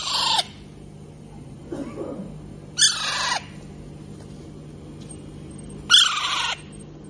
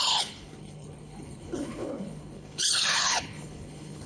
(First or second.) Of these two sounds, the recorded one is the first